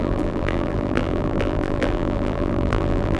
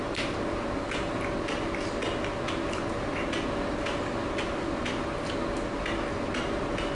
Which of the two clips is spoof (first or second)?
first